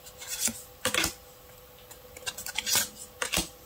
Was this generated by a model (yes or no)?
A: no